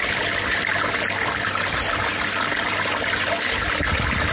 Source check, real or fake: real